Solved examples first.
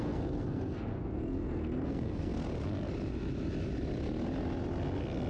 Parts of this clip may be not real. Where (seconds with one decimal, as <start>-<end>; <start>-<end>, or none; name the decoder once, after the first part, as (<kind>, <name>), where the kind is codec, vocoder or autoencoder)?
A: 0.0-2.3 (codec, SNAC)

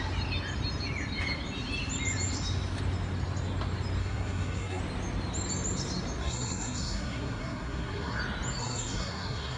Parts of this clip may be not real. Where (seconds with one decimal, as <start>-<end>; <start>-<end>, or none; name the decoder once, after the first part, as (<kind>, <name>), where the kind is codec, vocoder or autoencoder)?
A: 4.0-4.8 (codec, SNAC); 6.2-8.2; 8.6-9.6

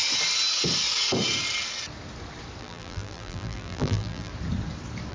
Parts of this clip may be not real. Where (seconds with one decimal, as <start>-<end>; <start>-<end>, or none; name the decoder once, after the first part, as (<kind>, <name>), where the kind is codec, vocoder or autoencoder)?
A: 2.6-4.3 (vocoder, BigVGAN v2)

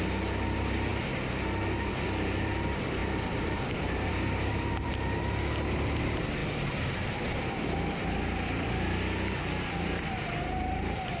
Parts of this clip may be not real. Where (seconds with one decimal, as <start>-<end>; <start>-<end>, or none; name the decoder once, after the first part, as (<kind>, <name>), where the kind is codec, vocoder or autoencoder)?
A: 3.0-5.5 (vocoder, BigVGAN v2); 6.4-7.5

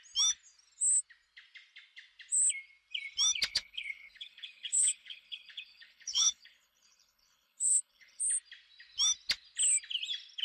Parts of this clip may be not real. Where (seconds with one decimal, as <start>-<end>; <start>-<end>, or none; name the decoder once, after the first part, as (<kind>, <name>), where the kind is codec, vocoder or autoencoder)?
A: 3.5-8.2 (codec, HILCodec)